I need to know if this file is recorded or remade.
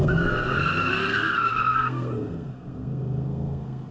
remade